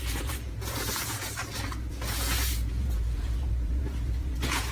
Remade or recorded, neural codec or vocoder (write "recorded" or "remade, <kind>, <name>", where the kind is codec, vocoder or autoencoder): remade, vocoder, Vocos